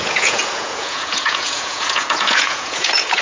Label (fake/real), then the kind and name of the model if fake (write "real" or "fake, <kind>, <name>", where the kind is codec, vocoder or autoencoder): fake, vocoder, Vocos